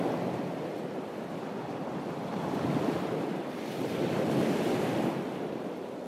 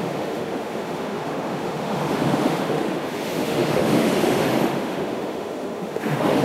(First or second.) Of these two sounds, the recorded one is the first